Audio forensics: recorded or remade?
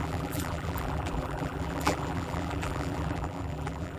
remade